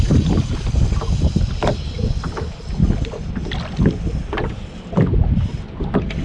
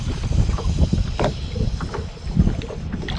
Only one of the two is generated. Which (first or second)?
second